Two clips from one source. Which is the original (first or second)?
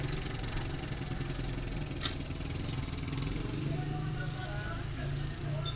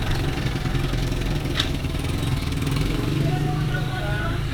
first